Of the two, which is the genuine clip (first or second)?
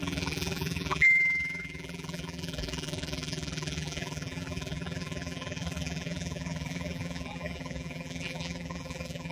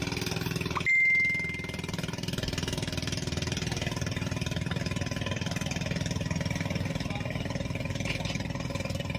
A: second